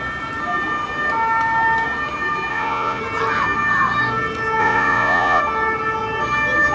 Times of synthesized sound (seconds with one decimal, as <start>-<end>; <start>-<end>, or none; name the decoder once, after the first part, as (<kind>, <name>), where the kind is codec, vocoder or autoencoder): 2.5-3.0 (vocoder, Vocos); 4.6-5.4